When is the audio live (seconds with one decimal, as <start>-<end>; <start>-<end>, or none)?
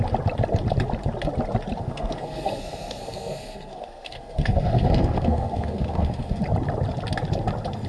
0.0-1.8; 6.4-7.9